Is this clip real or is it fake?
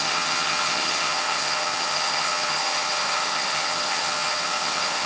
fake